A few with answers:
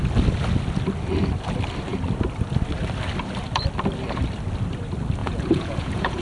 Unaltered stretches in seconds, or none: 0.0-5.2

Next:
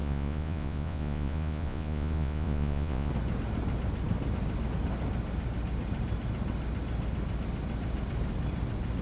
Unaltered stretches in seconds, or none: 3.1-9.0